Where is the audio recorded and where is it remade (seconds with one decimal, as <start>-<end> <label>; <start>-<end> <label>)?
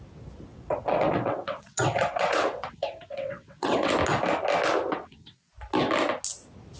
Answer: 0.0-0.5 recorded; 0.5-3.9 remade; 3.9-4.9 recorded; 4.9-5.5 remade; 5.5-6.8 recorded